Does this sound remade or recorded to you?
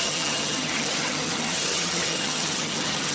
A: remade